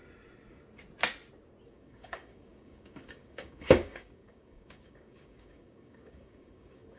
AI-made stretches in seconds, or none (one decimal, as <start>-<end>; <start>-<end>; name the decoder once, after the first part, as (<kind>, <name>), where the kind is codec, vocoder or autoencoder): 1.7-7.0 (codec, DAC)

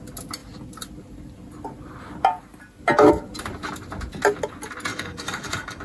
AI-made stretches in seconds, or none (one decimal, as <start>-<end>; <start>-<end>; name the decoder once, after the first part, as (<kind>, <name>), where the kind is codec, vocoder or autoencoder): 4.9-5.8 (codec, DAC)

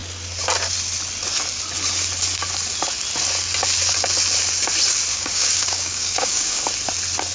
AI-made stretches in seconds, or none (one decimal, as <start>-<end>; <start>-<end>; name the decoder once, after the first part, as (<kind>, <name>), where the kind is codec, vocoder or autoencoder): 5.1-6.6 (codec, DAC)

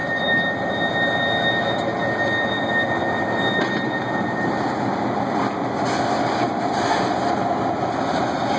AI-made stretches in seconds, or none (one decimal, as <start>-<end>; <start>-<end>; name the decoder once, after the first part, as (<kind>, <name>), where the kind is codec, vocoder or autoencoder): none

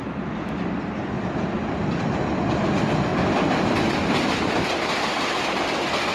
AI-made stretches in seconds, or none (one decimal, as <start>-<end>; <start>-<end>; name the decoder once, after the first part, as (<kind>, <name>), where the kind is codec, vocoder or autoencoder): none

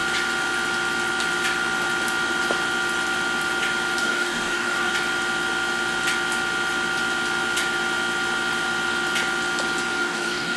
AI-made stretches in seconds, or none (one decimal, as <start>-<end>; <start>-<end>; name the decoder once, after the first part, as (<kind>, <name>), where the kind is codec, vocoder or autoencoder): 4.0-4.9 (codec, DAC); 10.0-10.6

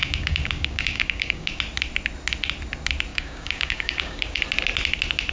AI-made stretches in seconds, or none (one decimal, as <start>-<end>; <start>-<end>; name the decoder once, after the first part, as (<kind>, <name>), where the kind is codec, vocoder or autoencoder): 0.0-1.6 (codec, DAC); 3.1-4.4

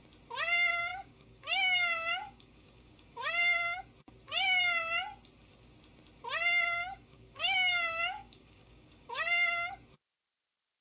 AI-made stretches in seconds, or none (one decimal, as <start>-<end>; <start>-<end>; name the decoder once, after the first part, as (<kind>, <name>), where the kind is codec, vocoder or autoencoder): 0.9-3.8 (codec, DAC); 6.8-9.7